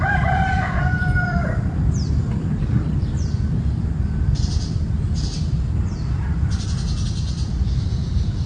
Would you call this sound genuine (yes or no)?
no